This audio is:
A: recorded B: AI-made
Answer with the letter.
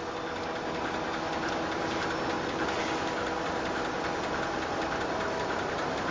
A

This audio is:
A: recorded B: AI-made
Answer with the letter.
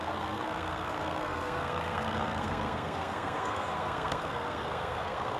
B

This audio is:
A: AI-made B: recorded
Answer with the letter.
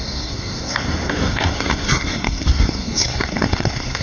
A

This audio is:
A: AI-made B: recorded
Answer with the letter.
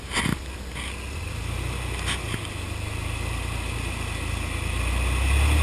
B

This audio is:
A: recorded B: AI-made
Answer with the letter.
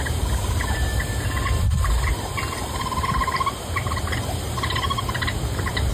A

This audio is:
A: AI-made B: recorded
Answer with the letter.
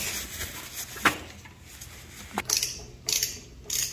B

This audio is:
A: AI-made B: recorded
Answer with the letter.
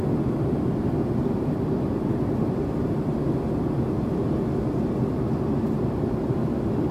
B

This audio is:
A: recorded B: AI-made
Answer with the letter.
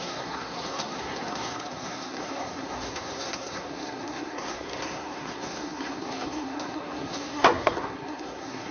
B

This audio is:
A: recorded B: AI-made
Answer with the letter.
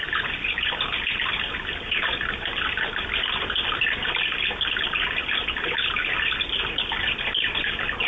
A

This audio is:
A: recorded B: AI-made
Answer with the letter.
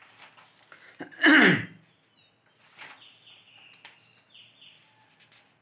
A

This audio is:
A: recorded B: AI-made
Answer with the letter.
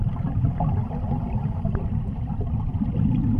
A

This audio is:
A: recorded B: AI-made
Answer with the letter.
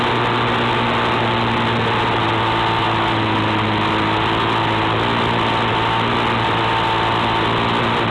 A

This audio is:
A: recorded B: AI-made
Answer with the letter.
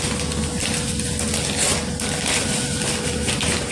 A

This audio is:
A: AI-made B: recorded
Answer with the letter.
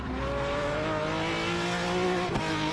B